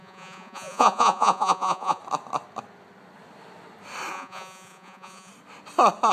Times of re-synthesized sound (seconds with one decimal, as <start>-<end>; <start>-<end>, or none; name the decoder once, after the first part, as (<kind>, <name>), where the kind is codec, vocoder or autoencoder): 0.0-2.0 (vocoder, Vocos); 4.1-5.3